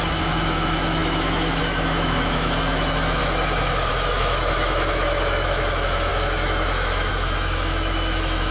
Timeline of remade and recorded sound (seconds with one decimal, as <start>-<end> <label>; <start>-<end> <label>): 0.0-8.5 remade